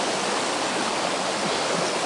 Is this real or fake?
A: real